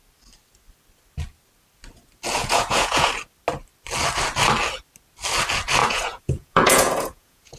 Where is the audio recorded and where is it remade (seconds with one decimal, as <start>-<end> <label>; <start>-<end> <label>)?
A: 0.0-2.4 recorded; 2.4-3.1 remade; 3.1-5.8 recorded; 5.8-7.6 remade

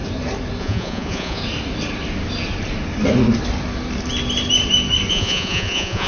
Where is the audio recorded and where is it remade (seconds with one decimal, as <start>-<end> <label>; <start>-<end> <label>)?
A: 0.0-0.6 recorded; 0.6-1.4 remade; 1.4-5.1 recorded; 5.1-6.1 remade

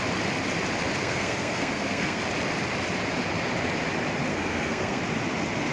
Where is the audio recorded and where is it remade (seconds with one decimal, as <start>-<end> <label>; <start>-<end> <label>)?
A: 0.0-1.0 recorded; 1.0-2.2 remade; 2.2-4.3 recorded; 4.3-5.0 remade; 5.0-5.7 recorded

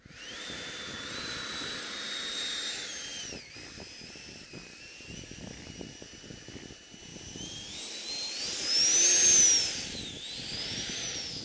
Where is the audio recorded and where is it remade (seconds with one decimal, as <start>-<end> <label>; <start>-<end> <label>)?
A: 0.0-3.1 recorded; 3.1-4.8 remade; 4.8-7.1 recorded; 7.1-7.7 remade; 7.7-11.4 recorded

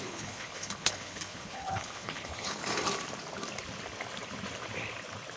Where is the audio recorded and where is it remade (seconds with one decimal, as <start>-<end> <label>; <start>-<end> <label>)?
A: 0.0-2.6 remade; 2.6-5.4 recorded

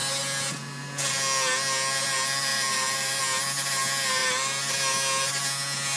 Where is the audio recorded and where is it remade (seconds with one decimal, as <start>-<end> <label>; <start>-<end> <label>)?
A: 0.0-2.5 recorded; 2.5-3.2 remade; 3.2-6.0 recorded

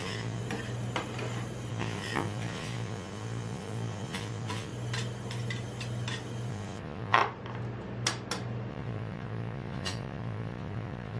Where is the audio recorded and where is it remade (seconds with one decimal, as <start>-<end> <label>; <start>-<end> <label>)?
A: 0.0-0.4 remade; 0.4-1.7 recorded; 1.7-4.7 remade; 4.7-6.5 recorded; 6.5-7.2 remade; 7.2-8.7 recorded; 8.7-11.2 remade

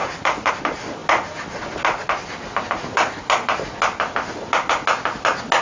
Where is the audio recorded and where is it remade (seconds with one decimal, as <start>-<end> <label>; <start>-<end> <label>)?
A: 0.0-0.5 remade; 0.5-5.6 recorded